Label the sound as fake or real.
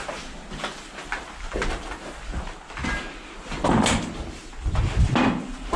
real